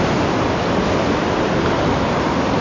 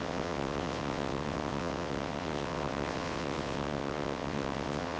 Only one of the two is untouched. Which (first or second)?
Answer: first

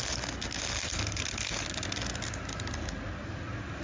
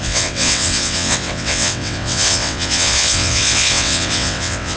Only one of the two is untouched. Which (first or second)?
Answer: first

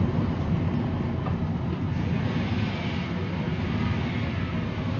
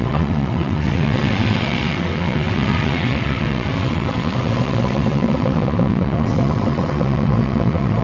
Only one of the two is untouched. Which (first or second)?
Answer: first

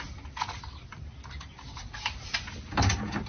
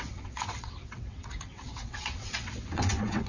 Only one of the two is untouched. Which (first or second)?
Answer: first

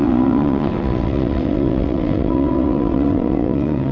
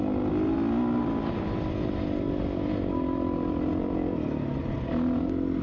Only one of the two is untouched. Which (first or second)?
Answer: second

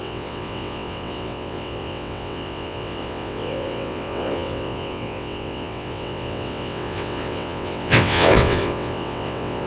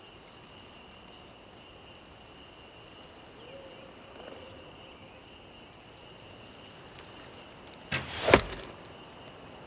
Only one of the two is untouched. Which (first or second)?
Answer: second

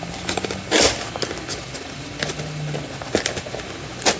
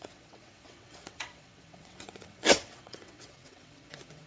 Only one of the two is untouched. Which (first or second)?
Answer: first